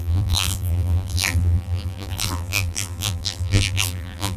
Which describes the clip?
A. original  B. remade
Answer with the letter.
B